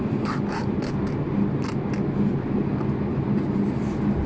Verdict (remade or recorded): recorded